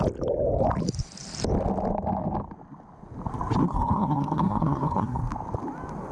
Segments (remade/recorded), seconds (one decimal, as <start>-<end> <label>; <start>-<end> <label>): 0.0-3.6 recorded; 3.6-5.2 remade; 5.2-6.1 recorded